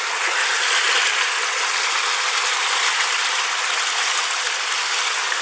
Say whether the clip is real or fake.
real